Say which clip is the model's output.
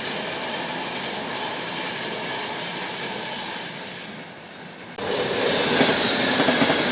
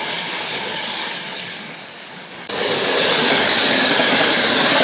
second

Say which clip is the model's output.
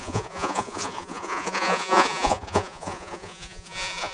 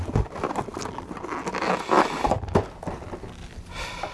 first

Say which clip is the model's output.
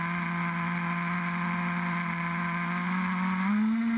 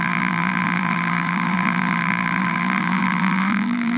second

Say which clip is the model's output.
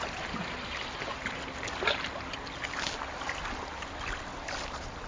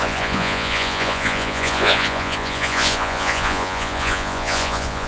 second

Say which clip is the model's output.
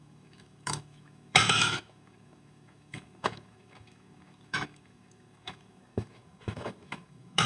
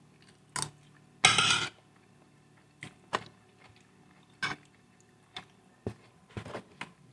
first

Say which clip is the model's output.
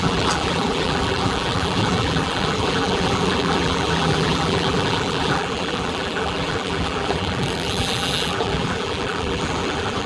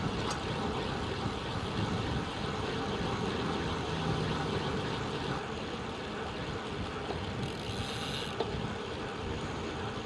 first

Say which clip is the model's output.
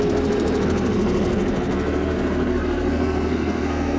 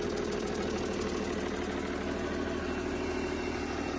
first